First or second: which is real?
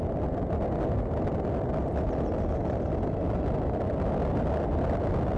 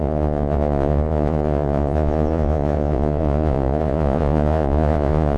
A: first